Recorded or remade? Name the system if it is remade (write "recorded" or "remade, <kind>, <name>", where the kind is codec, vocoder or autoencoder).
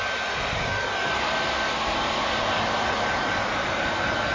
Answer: recorded